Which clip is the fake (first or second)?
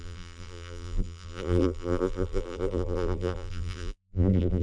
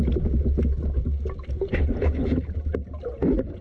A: first